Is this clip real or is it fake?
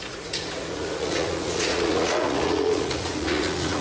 fake